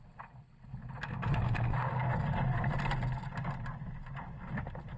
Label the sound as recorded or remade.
recorded